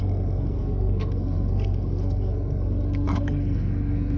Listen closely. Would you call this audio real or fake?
fake